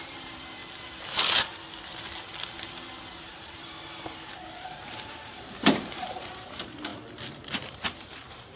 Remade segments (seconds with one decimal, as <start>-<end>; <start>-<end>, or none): 0.0-0.6; 4.6-6.9; 7.5-8.6